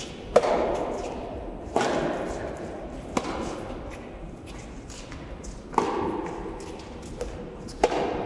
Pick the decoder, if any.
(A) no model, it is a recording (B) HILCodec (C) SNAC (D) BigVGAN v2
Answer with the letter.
A